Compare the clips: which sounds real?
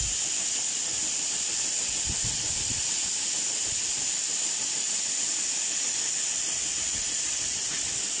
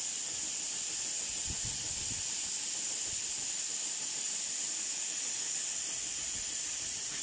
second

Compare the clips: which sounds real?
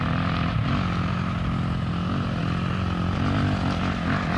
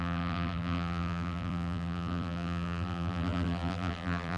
first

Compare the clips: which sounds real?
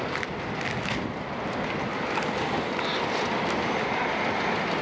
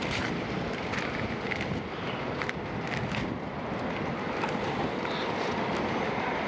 first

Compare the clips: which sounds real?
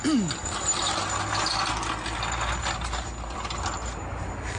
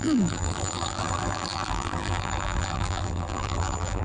first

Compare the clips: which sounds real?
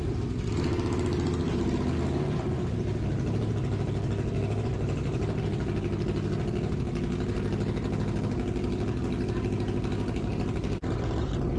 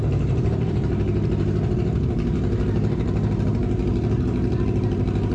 first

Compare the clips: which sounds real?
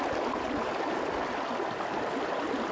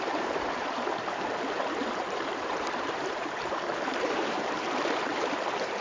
first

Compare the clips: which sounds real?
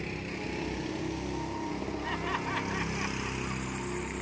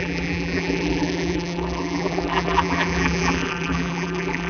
first